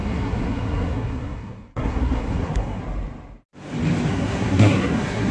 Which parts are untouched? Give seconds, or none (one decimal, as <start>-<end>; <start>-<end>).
2.8-4.1